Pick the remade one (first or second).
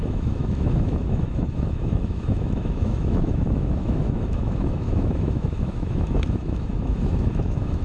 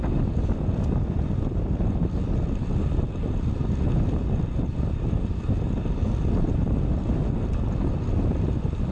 first